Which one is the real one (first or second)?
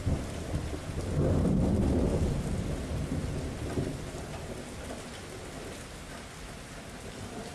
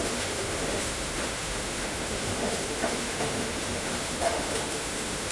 first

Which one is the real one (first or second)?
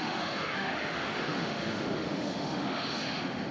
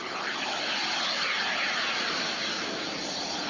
second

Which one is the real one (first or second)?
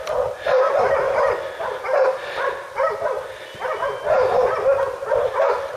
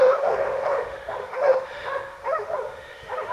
first